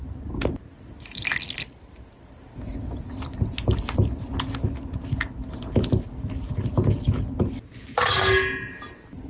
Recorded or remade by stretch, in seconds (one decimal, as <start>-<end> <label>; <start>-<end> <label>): 0.0-9.3 recorded